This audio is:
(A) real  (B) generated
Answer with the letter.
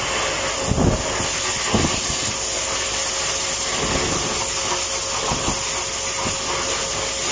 A